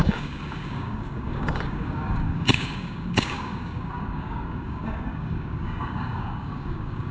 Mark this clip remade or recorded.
remade